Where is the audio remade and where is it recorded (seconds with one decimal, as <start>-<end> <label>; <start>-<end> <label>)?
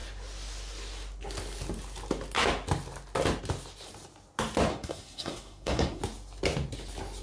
0.0-4.7 recorded; 4.7-6.0 remade; 6.0-7.2 recorded